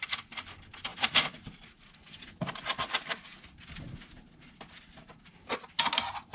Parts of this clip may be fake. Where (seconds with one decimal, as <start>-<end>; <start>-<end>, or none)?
none